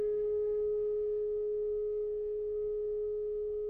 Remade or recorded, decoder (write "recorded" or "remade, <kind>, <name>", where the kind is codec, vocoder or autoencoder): remade, codec, SNAC